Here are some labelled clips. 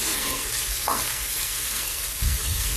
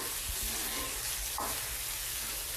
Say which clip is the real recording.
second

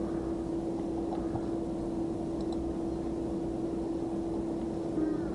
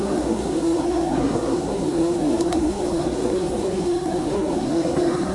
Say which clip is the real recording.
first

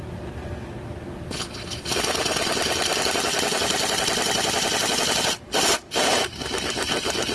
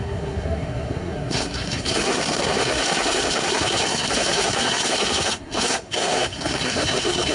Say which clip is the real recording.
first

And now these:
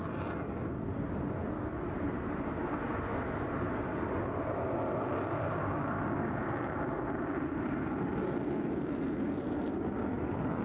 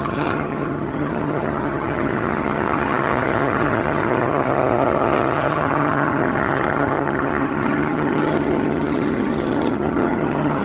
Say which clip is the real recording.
first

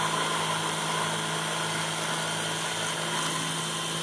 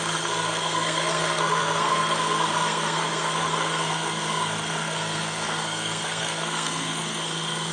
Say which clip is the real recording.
first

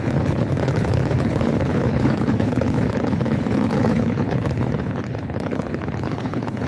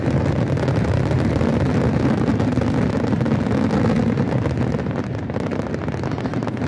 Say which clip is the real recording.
second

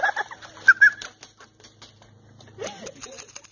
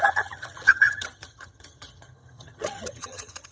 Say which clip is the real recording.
first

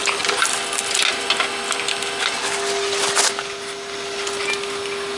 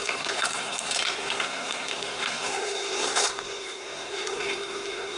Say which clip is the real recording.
first